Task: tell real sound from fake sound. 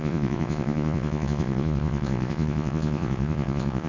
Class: fake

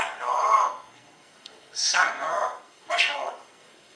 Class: fake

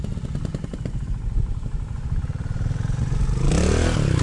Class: real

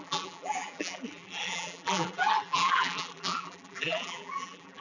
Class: fake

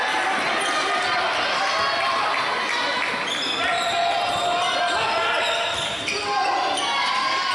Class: real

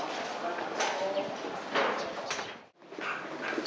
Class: real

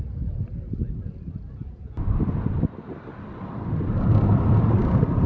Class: real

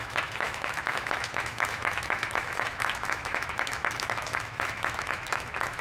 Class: fake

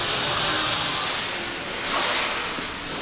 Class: real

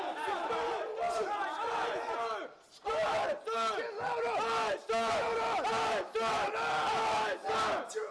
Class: real